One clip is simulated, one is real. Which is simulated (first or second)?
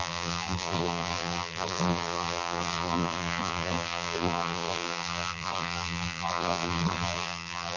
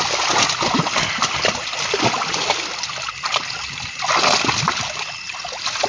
first